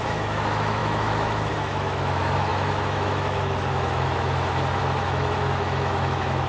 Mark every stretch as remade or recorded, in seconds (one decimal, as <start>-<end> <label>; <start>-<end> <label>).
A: 0.0-6.5 remade